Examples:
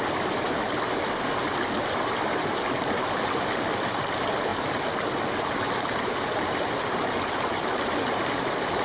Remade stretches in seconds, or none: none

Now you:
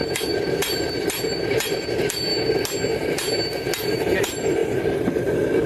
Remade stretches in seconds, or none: 0.0-2.3 (vocoder, BigVGAN v2); 3.9-5.7

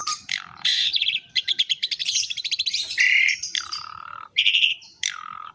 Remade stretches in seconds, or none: 0.0-5.5 (vocoder, BigVGAN v2)

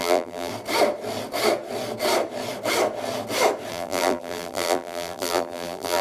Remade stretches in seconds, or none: 0.0-0.5 (vocoder, BigVGAN v2); 3.7-6.0

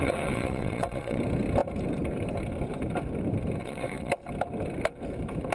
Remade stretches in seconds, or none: 0.0-1.2 (vocoder, WaveNeXt); 3.6-4.1

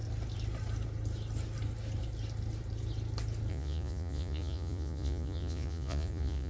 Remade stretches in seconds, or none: 3.5-6.5 (vocoder, Vocos)

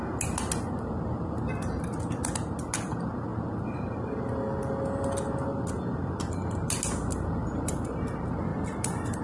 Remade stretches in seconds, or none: 7.4-8.0 (vocoder, BigVGAN v2); 8.5-9.2